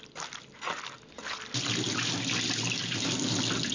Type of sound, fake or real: real